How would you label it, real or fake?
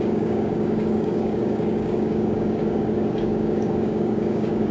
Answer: fake